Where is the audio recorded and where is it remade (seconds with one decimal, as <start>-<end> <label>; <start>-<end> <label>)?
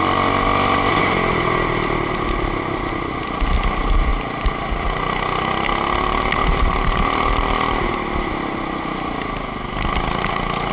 0.0-10.7 recorded